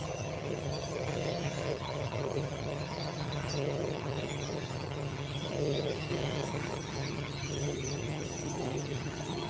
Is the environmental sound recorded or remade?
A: remade